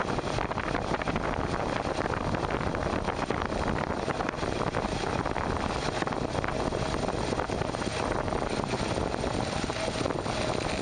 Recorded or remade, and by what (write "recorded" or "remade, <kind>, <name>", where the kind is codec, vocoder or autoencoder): recorded